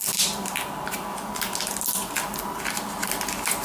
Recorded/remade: recorded